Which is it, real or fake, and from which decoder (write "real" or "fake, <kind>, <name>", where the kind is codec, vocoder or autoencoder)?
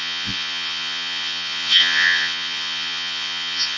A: fake, vocoder, Vocos